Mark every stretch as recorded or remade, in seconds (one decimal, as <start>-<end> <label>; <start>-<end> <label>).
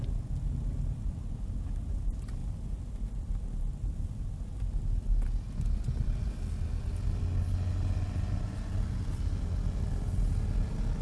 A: 0.0-11.0 recorded